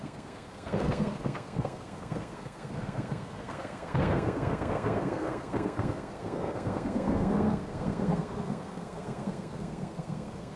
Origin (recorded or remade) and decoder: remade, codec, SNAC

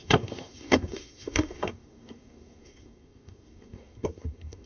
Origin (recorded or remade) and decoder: remade, codec, SNAC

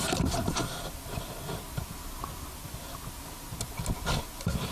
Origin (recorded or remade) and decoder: recorded